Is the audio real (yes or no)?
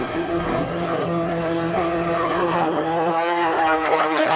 no